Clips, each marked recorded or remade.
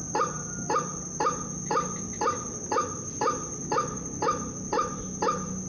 recorded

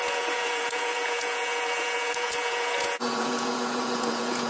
remade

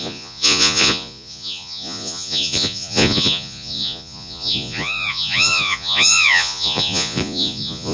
remade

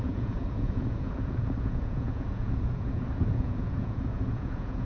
remade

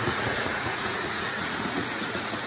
remade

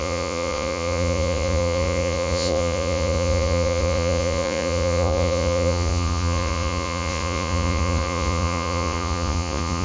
remade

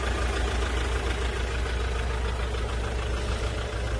recorded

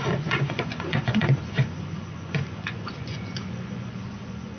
remade